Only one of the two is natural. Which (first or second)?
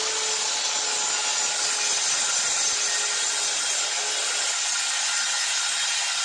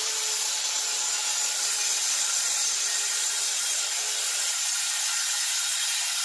first